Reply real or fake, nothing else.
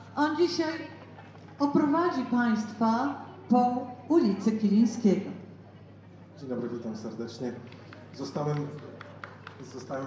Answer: real